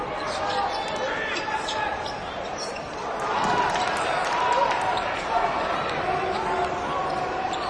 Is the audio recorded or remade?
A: recorded